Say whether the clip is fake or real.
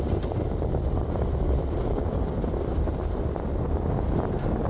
real